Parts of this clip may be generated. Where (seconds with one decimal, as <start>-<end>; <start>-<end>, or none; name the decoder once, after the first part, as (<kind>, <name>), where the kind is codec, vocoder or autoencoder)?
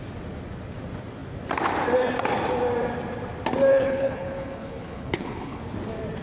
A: 3.7-5.6 (codec, HILCodec)